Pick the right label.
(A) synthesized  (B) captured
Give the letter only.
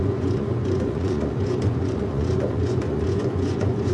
A